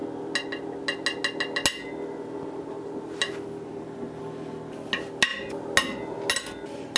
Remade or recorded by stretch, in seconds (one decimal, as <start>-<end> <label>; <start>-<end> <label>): 0.0-7.0 recorded